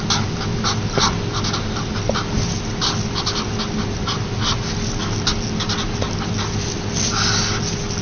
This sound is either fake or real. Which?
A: real